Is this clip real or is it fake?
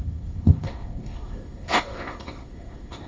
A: fake